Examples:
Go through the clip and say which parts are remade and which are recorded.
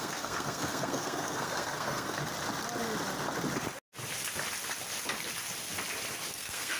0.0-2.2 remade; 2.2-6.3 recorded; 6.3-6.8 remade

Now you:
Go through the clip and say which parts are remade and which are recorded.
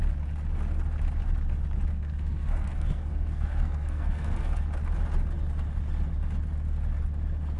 0.0-1.9 recorded; 1.9-4.6 remade; 4.6-7.6 recorded